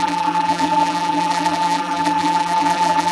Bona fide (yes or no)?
no